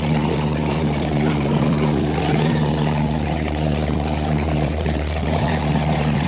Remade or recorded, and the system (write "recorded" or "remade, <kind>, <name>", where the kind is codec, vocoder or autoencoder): remade, vocoder, Vocos